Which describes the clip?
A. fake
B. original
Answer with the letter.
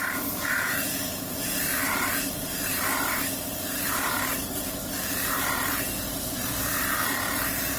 A